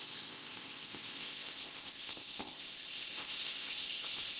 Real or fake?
fake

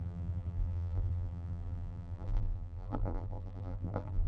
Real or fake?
fake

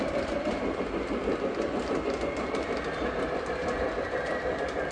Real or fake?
fake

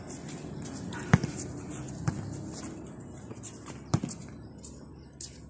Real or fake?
real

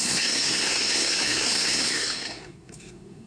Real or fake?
fake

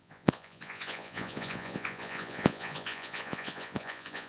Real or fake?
fake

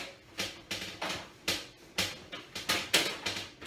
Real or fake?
real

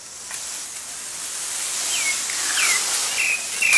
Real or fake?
real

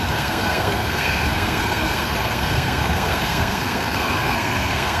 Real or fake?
fake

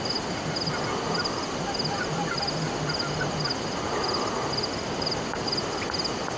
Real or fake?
real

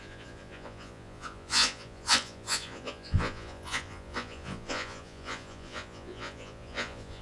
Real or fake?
fake